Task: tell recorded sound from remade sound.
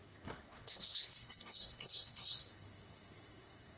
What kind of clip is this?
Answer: remade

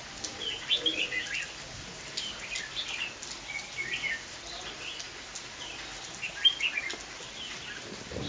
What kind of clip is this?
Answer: recorded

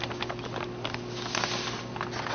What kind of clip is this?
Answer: recorded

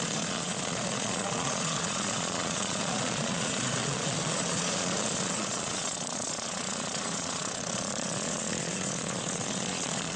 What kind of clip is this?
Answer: remade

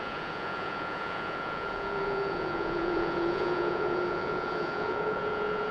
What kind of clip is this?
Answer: remade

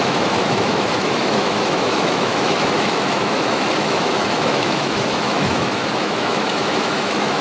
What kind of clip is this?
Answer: remade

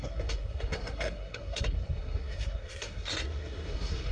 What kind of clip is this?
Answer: remade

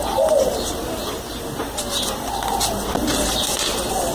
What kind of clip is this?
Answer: recorded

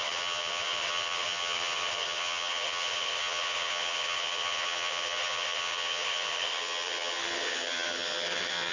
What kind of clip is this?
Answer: remade